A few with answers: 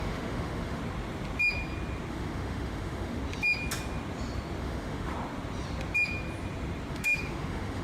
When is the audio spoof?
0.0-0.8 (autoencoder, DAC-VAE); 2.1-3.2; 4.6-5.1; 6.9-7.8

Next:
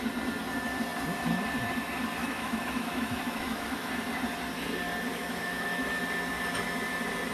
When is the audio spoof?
2.2-3.9 (autoencoder, DAC-VAE); 5.1-6.0

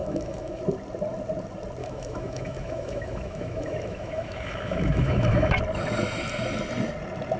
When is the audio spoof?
0.0-0.6 (autoencoder, DAC-VAE); 1.8-5.5

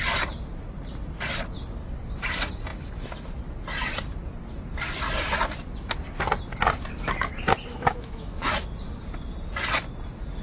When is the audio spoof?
7.7-8.5 (autoencoder, DAC-VAE)

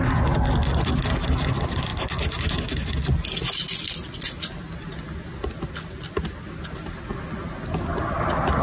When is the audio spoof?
none

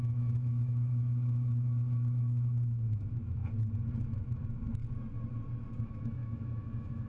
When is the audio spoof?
0.0-3.4 (autoencoder, DAC-VAE); 4.0-4.8; 5.8-7.1